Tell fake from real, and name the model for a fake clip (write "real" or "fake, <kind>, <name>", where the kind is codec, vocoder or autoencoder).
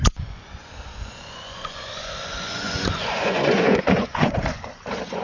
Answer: fake, vocoder, Vocos